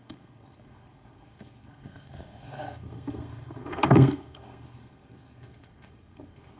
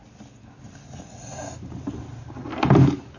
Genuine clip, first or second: second